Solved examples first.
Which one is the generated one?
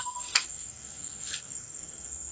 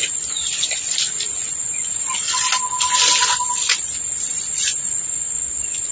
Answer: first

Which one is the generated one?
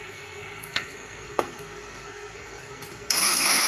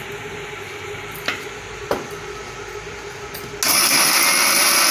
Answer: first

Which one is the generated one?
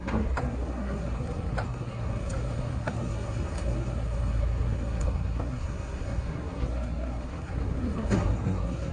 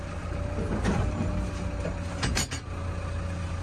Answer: first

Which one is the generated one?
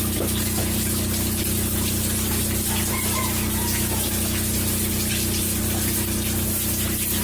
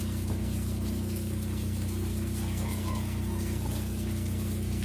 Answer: second